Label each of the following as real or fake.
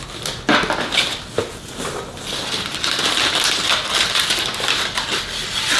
real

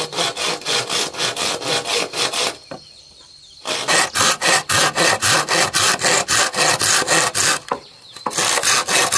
real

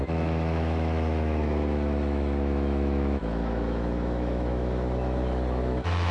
fake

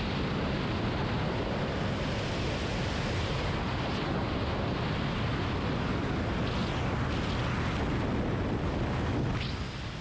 real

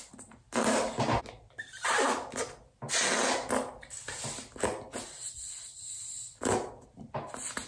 real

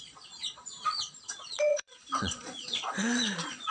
fake